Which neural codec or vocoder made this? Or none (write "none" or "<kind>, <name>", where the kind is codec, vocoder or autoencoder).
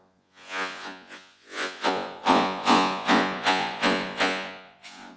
vocoder, Vocos